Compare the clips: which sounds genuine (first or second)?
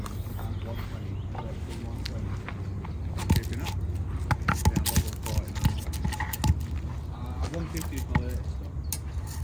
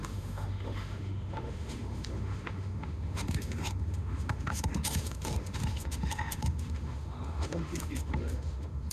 first